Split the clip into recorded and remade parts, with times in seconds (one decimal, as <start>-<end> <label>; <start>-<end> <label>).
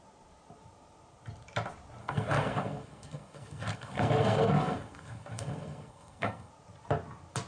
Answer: 0.0-2.0 recorded; 2.0-6.5 remade; 6.5-7.5 recorded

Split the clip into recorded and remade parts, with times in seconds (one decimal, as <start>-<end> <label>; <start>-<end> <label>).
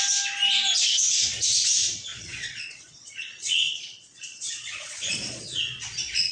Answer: 0.0-2.1 recorded; 2.1-6.3 remade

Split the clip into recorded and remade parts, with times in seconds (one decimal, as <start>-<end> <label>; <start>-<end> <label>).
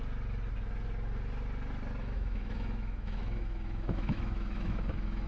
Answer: 0.0-2.0 recorded; 2.0-5.3 remade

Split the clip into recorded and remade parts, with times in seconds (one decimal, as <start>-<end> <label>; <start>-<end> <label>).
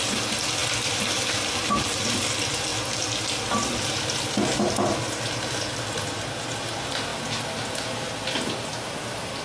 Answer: 0.0-9.4 recorded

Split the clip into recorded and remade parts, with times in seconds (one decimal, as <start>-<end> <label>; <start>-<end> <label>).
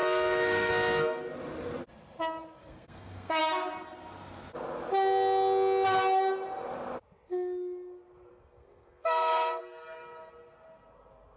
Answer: 0.0-0.7 remade; 0.7-2.6 recorded; 2.6-3.4 remade; 3.4-8.3 recorded; 8.3-9.6 remade; 9.6-11.4 recorded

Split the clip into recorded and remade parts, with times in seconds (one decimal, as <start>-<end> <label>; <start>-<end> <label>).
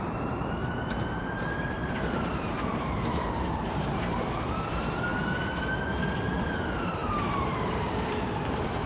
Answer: 0.0-5.1 remade; 5.1-6.5 recorded; 6.5-8.9 remade